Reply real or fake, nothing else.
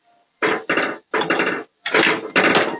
real